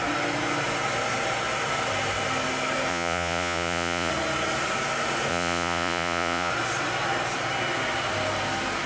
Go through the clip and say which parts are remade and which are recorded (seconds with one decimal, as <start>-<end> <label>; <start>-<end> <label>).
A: 0.0-2.9 recorded; 2.9-4.1 remade; 4.1-5.3 recorded; 5.3-6.5 remade; 6.5-8.9 recorded